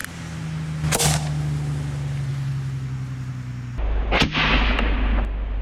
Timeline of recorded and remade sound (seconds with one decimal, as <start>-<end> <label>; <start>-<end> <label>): 0.0-5.6 recorded